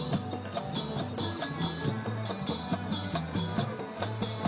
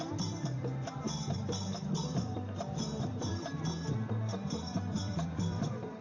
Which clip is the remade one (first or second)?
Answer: second